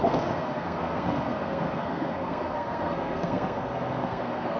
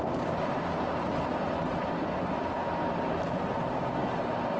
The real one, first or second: second